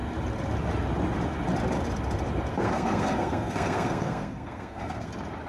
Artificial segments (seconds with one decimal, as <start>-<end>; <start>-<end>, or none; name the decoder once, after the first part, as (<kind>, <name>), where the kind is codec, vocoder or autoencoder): 2.5-5.1 (codec, SNAC)